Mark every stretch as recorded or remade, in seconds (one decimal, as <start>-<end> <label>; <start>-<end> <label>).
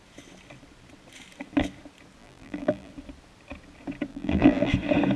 0.0-2.2 recorded; 2.2-2.9 remade; 2.9-4.1 recorded; 4.1-4.7 remade; 4.7-5.2 recorded